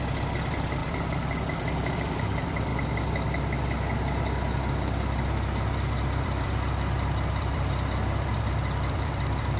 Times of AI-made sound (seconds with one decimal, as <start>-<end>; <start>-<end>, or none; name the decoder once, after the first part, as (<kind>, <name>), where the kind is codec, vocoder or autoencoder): 0.0-2.7 (vocoder, BigVGAN v2); 6.0-9.6